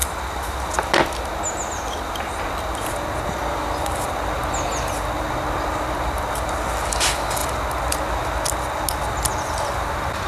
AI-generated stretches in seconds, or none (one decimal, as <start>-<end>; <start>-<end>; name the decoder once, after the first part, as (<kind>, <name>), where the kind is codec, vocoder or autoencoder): none